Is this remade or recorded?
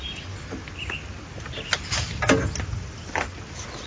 recorded